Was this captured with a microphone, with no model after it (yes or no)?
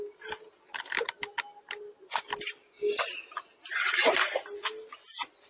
yes